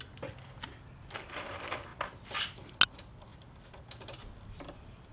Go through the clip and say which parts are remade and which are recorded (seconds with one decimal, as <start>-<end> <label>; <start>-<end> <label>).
0.0-5.1 recorded